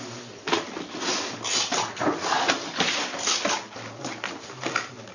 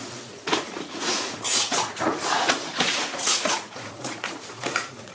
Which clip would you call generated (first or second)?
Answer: second